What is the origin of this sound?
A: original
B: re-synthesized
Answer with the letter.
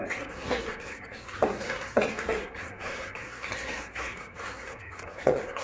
B